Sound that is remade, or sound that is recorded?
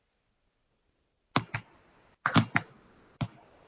recorded